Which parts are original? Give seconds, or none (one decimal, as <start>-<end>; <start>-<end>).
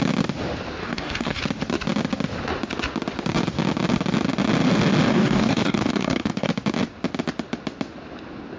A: 0.0-0.8; 1.4-5.1; 6.5-8.6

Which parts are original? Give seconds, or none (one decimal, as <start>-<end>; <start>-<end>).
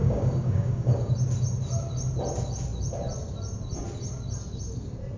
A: 1.1-5.2